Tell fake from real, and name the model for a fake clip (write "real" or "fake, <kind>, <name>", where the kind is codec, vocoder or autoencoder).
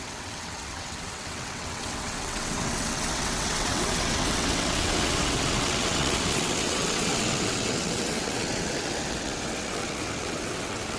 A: fake, vocoder, WaveNeXt